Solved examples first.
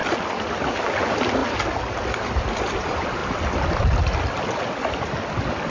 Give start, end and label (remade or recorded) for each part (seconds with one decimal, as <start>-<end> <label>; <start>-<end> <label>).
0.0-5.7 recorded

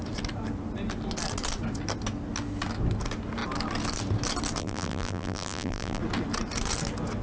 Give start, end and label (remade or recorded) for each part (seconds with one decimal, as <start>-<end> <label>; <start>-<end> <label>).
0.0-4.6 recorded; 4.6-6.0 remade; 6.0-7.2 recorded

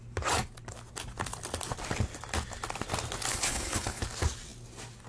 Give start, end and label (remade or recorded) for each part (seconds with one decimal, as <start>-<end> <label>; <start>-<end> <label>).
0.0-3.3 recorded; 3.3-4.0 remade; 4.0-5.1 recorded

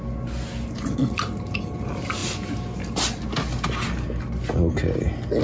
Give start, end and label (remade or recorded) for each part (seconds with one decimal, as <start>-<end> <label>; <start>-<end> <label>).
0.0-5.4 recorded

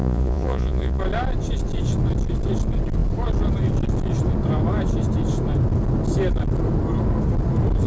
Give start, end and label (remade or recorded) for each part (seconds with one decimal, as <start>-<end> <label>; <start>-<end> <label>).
0.0-1.0 remade; 1.0-7.9 recorded

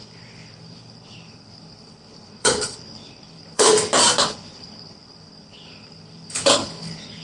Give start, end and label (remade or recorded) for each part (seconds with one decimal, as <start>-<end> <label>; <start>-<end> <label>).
0.0-3.7 remade; 3.7-4.2 recorded; 4.2-7.2 remade